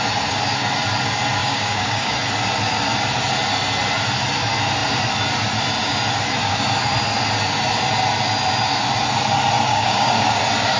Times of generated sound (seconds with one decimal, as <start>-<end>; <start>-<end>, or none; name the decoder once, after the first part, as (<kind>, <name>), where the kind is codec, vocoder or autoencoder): 1.4-2.1 (codec, DAC); 9.7-10.4